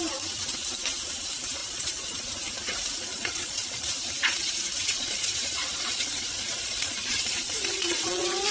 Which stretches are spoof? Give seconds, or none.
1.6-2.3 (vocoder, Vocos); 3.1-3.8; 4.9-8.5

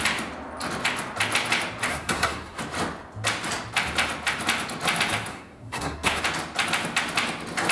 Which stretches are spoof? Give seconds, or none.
1.9-2.6 (codec, SNAC); 5.3-6.2